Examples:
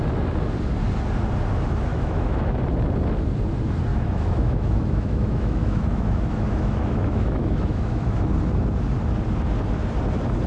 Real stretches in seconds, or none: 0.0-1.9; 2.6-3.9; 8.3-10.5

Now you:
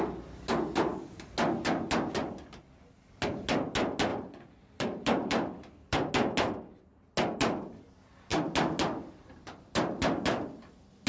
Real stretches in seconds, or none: 0.0-4.1; 6.1-11.1

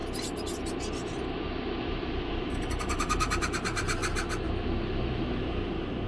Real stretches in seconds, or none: 0.0-1.8; 4.0-6.1